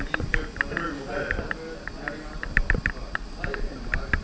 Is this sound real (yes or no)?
yes